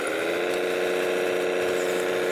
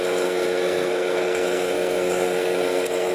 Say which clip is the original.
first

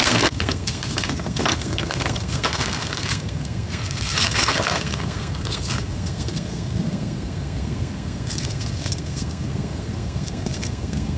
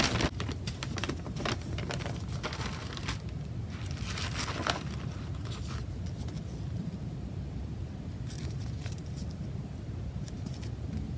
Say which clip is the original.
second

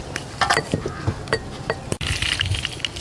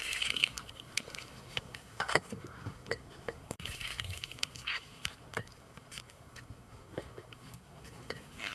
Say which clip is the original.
first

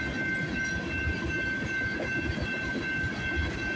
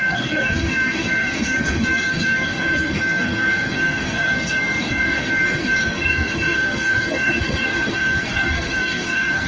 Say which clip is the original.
first